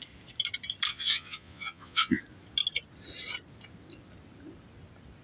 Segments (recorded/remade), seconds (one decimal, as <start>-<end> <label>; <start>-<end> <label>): 0.0-0.9 recorded; 0.9-2.2 remade; 2.2-5.2 recorded